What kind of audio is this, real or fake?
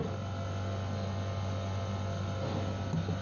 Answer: real